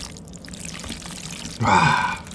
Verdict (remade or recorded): remade